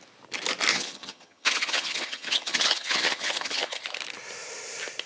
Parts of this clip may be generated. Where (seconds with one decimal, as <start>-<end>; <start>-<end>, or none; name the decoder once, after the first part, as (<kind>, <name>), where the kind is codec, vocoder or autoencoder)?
0.7-3.8 (vocoder, HiFi-GAN)